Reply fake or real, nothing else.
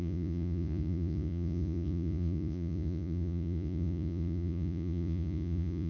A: fake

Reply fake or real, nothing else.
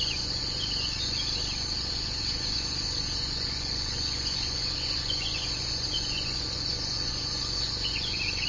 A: fake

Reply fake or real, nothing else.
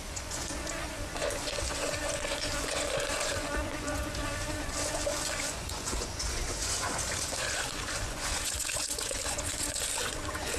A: fake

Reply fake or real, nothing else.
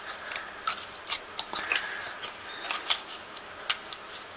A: real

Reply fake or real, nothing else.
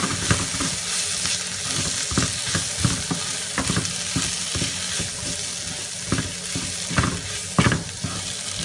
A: real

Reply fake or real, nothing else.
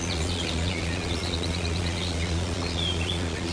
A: fake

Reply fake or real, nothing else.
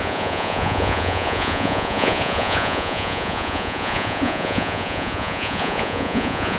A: fake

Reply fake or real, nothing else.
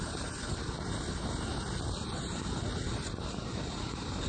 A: real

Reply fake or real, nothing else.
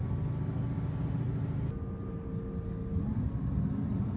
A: real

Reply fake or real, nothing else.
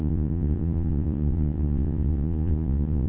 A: fake